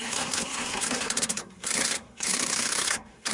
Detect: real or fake fake